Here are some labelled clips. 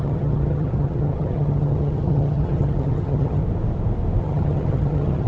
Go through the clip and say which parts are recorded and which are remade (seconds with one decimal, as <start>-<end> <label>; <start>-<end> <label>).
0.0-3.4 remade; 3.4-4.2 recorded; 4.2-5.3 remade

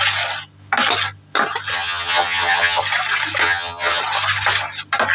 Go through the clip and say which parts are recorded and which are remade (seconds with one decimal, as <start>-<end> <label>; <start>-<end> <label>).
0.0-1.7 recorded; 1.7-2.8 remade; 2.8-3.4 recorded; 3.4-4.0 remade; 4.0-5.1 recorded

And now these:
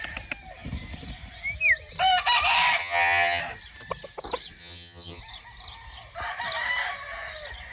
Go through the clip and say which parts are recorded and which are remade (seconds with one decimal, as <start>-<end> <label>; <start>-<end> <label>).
0.0-2.8 recorded; 2.8-3.4 remade; 3.4-4.6 recorded; 4.6-5.2 remade; 5.2-7.7 recorded

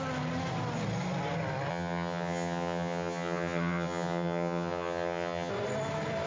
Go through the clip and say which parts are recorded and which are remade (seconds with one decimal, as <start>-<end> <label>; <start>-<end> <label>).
0.0-1.7 recorded; 1.7-5.5 remade; 5.5-6.3 recorded

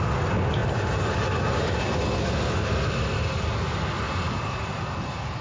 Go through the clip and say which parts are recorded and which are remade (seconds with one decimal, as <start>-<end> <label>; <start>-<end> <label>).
0.0-5.4 recorded

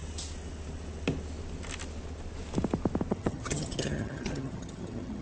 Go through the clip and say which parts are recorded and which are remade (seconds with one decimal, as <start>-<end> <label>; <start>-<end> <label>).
0.0-3.1 recorded; 3.1-5.2 remade

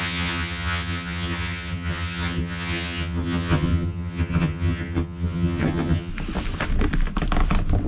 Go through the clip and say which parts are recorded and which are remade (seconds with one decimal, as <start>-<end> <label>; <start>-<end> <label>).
0.0-6.1 remade; 6.1-7.9 recorded

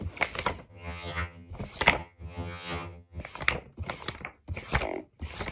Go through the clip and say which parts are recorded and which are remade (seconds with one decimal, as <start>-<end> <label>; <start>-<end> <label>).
0.0-0.7 recorded; 0.7-1.5 remade; 1.5-2.0 recorded; 2.0-3.2 remade; 3.2-5.5 recorded